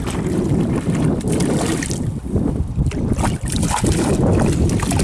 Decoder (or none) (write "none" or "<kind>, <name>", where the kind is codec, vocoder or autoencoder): none